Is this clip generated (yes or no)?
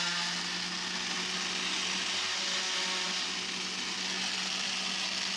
no